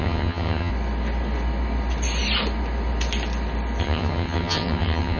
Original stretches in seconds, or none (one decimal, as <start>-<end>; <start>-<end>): 0.7-3.8